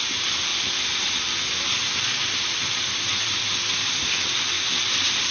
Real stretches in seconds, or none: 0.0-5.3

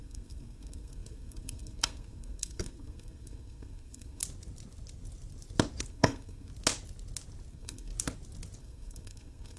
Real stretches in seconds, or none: 4.2-5.9; 6.5-7.5; 7.9-8.6

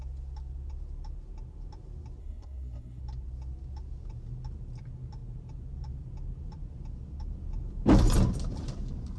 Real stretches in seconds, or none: 0.0-2.2; 3.0-9.2